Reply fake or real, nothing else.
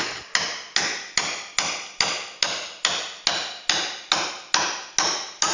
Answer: real